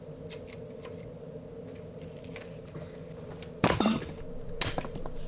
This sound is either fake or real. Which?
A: real